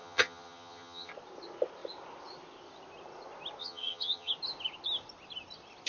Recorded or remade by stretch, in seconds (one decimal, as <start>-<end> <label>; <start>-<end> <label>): 0.0-1.1 remade; 1.1-3.6 recorded; 3.6-4.3 remade; 4.3-5.9 recorded